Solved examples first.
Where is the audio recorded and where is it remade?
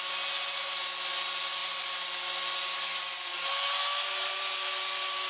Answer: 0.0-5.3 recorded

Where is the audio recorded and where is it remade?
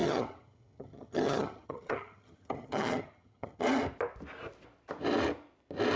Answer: 0.0-3.6 remade; 3.6-6.0 recorded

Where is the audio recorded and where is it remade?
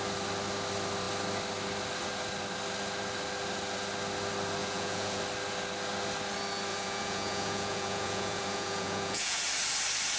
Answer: 0.0-4.6 recorded; 4.6-5.2 remade; 5.2-6.7 recorded; 6.7-9.4 remade; 9.4-10.2 recorded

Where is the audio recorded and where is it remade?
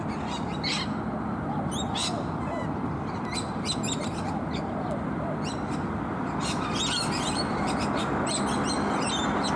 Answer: 0.0-9.6 recorded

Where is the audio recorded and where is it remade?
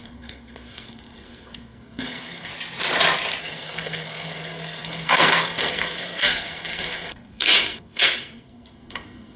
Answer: 0.0-2.5 remade; 2.5-3.4 recorded; 3.4-9.4 remade